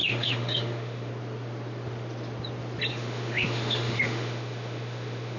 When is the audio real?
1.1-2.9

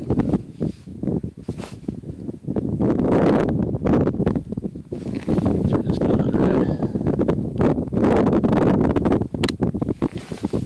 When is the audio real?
3.6-4.2